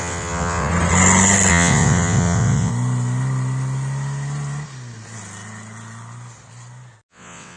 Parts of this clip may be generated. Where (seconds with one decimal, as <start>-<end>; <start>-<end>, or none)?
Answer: 0.0-0.7; 1.5-2.7; 7.1-7.6